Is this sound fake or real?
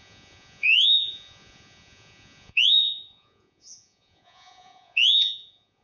fake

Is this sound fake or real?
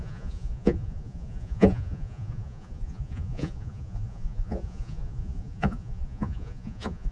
fake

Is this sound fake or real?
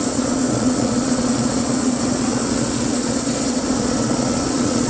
fake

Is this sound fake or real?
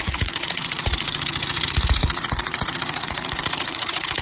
fake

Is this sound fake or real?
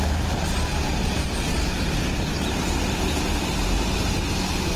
real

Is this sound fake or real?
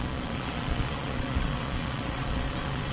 fake